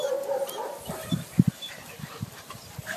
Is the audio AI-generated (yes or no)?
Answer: yes